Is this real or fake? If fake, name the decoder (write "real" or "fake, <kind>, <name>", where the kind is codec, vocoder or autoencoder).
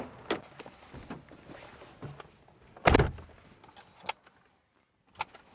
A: real